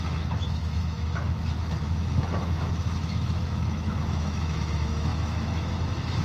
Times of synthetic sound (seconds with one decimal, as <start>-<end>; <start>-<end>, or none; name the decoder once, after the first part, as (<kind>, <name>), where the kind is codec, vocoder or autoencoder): 0.0-6.2 (autoencoder, DAC-VAE)